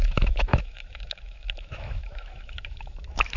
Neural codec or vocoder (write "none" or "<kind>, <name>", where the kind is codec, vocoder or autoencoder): autoencoder, DAC-VAE